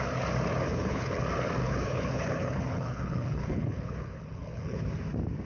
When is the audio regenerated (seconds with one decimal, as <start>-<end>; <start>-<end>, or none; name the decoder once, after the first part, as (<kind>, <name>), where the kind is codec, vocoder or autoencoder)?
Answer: 0.7-1.2 (codec, HILCodec); 1.6-4.9